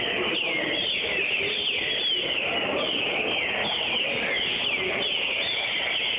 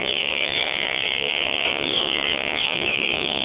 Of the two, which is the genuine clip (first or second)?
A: first